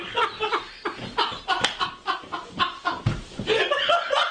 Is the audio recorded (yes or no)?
yes